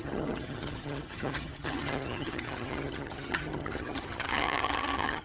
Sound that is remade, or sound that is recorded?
remade